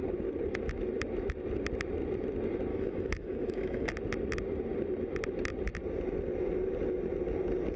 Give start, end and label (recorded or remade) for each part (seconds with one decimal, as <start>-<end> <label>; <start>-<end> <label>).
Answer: 0.0-2.7 recorded; 2.7-3.9 remade; 3.9-7.8 recorded